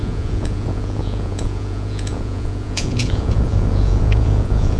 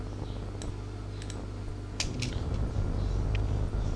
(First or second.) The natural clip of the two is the second